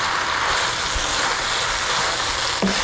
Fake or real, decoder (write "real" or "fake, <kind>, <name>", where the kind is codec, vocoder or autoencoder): real